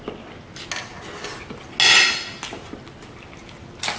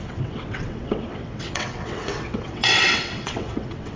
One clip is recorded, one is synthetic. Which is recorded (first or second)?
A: first